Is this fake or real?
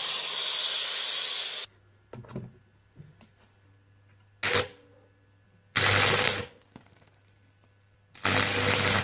fake